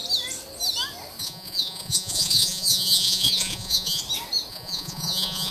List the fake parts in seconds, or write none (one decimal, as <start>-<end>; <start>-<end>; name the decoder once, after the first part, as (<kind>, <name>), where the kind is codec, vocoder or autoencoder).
1.2-4.0 (vocoder, Vocos); 4.5-5.5